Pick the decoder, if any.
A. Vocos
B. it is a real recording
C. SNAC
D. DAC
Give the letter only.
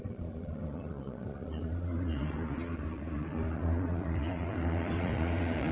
A